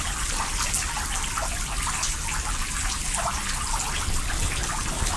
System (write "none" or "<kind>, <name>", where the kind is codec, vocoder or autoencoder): none